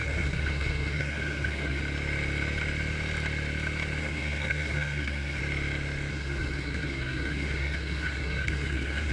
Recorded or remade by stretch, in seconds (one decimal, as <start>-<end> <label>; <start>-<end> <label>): 0.0-1.8 remade; 1.8-4.0 recorded; 4.0-5.4 remade; 5.4-6.1 recorded; 6.1-9.1 remade